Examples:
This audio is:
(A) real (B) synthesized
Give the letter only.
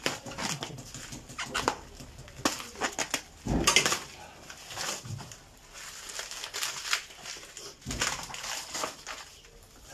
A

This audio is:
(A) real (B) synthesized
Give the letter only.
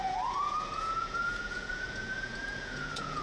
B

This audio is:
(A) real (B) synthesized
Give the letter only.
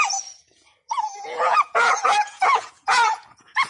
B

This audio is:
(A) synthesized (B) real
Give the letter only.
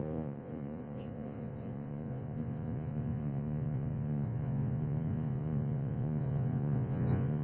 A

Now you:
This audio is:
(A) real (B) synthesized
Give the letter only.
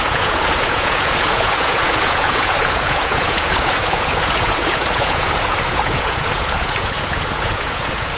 B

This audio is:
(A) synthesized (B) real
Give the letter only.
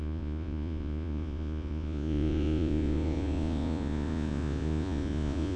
A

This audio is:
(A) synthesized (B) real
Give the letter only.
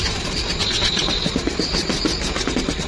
B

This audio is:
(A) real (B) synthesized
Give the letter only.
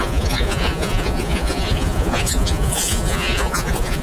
B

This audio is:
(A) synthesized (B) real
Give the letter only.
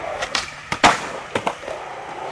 B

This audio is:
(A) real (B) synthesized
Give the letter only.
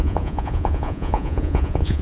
B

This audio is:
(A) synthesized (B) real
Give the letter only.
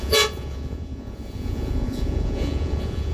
A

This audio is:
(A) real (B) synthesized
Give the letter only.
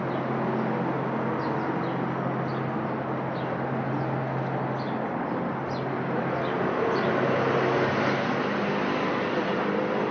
A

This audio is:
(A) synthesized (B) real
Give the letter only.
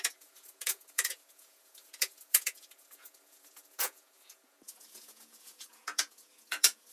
A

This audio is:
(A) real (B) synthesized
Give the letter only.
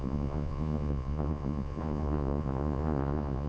B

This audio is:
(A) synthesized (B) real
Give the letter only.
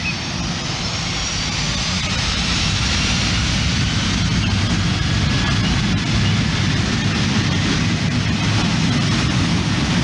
B